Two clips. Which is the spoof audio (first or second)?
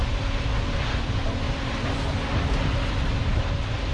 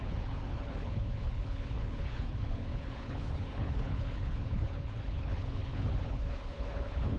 second